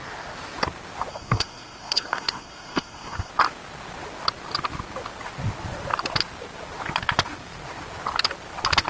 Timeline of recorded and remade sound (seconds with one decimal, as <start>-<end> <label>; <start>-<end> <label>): 0.0-1.1 recorded; 1.1-3.3 remade; 3.3-8.9 recorded